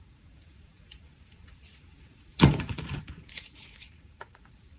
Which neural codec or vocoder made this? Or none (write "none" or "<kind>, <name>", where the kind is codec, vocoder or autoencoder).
vocoder, Vocos